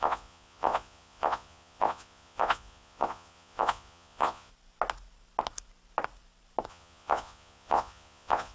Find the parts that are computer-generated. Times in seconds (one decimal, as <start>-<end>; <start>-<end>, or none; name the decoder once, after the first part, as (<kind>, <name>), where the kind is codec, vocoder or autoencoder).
0.0-4.5 (vocoder, Vocos); 6.7-8.5